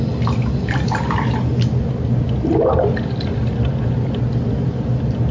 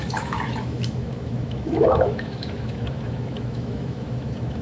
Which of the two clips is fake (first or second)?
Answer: second